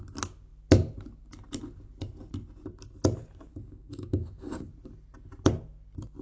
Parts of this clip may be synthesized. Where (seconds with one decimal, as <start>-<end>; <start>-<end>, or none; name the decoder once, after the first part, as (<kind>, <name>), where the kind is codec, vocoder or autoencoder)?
3.5-4.7 (codec, DAC)